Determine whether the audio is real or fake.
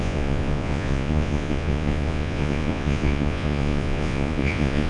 fake